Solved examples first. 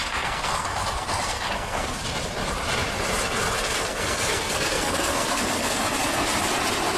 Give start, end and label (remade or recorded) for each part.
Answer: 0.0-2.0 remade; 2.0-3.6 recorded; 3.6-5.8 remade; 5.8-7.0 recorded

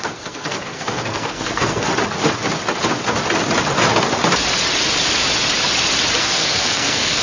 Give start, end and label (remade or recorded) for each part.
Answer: 0.0-1.9 remade; 1.9-6.2 recorded; 6.2-7.2 remade

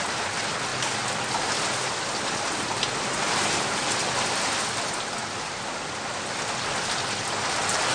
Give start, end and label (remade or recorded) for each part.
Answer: 0.0-7.9 recorded